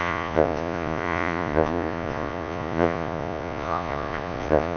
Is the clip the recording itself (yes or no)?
no